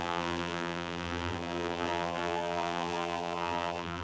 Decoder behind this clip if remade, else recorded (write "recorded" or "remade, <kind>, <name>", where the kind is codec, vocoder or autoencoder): remade, vocoder, BigVGAN v2